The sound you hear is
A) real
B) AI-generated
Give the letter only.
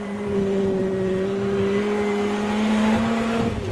A